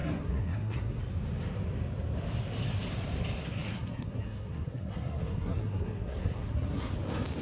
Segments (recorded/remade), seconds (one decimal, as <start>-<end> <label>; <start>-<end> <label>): 0.0-1.0 remade; 1.0-3.4 recorded; 3.4-6.9 remade; 6.9-7.4 recorded